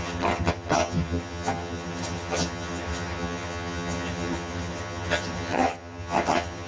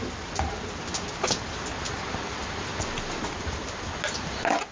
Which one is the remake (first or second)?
first